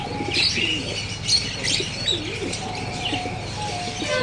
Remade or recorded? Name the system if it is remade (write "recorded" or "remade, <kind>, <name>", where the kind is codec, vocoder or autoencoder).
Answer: recorded